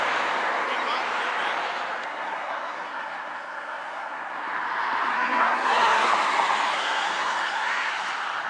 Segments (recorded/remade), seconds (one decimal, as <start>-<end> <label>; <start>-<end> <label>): 0.0-2.0 recorded; 2.0-4.5 remade; 4.5-5.1 recorded; 5.1-6.1 remade; 6.1-6.7 recorded; 6.7-7.9 remade; 7.9-8.5 recorded

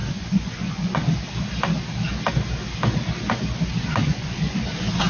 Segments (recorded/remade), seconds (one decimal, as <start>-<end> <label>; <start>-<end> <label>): 0.0-1.1 remade; 1.1-3.8 recorded; 3.8-5.1 remade

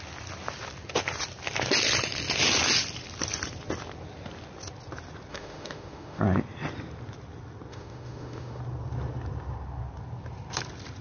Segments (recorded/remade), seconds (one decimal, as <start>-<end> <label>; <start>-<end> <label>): 0.0-5.3 recorded; 5.3-6.2 remade; 6.2-7.7 recorded; 7.7-8.6 remade; 8.6-11.0 recorded

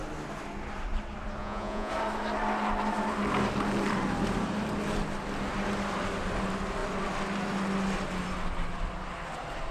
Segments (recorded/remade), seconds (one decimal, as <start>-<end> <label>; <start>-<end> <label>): 0.0-1.4 recorded; 1.4-1.9 remade; 1.9-9.7 recorded

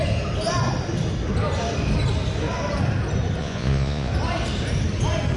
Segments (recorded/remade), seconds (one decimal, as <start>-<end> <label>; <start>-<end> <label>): 0.0-3.4 recorded; 3.4-4.1 remade; 4.1-5.4 recorded

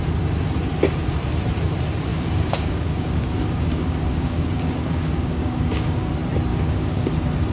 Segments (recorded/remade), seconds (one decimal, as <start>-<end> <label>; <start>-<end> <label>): 0.0-2.1 recorded; 2.1-6.1 remade; 6.1-6.5 recorded; 6.5-7.1 remade; 7.1-7.5 recorded

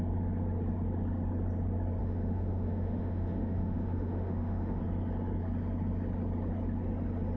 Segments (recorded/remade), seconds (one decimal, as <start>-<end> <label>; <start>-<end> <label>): 0.0-2.0 recorded; 2.0-4.8 remade; 4.8-7.4 recorded

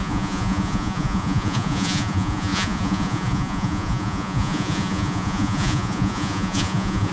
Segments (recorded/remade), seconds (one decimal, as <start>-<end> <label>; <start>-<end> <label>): 0.0-7.1 remade